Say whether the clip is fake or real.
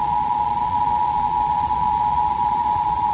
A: fake